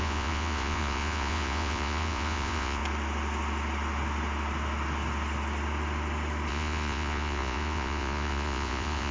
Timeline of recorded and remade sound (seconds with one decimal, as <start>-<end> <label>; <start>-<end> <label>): 0.0-2.8 remade; 2.8-6.5 recorded; 6.5-9.1 remade